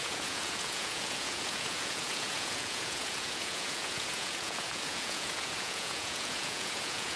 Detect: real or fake fake